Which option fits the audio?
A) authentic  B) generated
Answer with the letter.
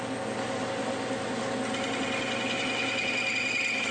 A